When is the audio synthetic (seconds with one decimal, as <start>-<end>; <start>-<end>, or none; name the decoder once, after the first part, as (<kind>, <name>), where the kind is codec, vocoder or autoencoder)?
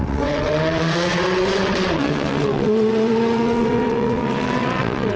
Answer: 0.0-5.2 (vocoder, WaveNeXt)